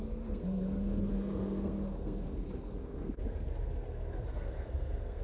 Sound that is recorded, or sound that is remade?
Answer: remade